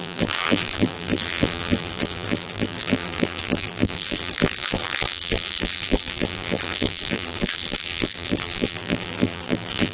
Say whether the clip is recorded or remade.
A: remade